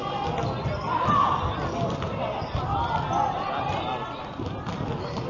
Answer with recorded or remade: recorded